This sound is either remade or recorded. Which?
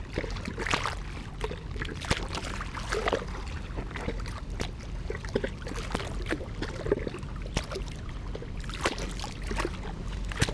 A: recorded